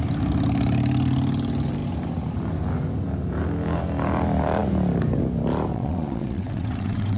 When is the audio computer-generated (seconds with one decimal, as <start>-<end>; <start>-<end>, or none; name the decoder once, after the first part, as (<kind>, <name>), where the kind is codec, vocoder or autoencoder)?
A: 5.7-7.2 (vocoder, WaveNeXt)